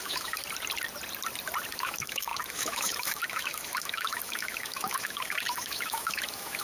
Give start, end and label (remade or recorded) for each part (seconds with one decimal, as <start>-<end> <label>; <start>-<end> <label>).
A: 0.0-0.4 remade; 0.4-1.7 recorded; 1.7-6.6 remade